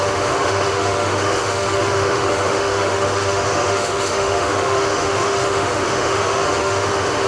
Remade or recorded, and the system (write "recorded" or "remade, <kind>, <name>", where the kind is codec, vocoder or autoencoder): remade, autoencoder, DAC-VAE